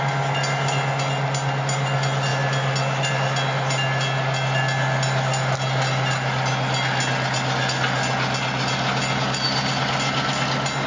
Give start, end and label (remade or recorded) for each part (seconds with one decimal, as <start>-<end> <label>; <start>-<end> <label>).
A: 0.0-10.9 recorded